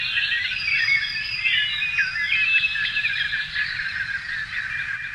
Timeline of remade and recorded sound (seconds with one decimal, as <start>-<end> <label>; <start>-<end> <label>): 0.0-5.1 recorded